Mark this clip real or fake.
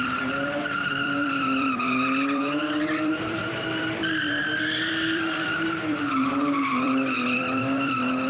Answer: fake